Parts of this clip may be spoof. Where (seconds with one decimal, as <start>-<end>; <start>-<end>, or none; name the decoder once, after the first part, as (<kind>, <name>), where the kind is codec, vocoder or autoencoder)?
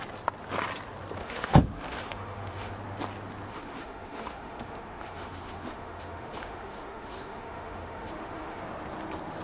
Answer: 1.2-2.7 (autoencoder, DAC-VAE); 3.5-8.6